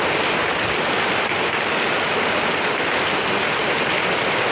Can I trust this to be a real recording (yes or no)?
yes